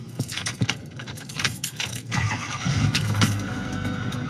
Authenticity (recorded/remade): remade